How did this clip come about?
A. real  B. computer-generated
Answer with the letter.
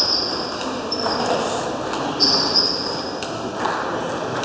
A